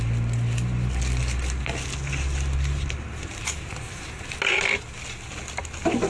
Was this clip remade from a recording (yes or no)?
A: no